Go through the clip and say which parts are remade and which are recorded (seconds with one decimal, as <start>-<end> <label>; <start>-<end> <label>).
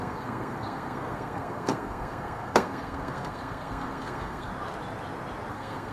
0.0-4.5 remade; 4.5-5.5 recorded; 5.5-5.9 remade